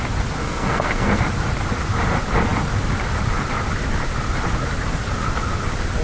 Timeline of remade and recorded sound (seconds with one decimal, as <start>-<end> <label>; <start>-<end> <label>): 0.0-0.4 recorded; 0.4-1.2 remade; 1.2-6.0 recorded